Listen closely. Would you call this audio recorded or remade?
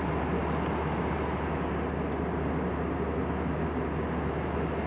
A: recorded